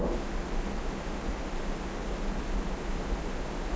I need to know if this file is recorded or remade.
recorded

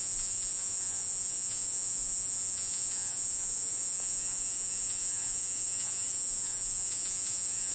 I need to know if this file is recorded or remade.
remade